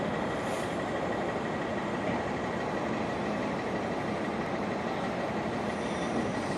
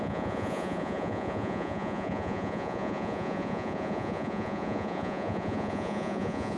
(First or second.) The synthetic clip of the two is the second